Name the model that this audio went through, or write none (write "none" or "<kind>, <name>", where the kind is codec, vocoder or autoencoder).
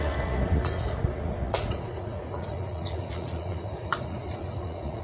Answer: vocoder, Vocos